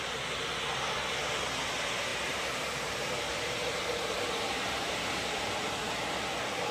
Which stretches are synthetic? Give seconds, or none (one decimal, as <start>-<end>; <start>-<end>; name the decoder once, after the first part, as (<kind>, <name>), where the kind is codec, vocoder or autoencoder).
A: 2.1-6.0 (vocoder, BigVGAN v2)